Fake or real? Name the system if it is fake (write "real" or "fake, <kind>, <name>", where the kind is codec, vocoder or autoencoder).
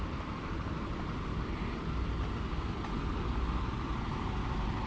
real